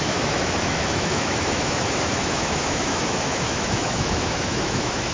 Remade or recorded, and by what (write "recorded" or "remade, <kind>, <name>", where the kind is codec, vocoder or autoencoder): remade, autoencoder, DAC-VAE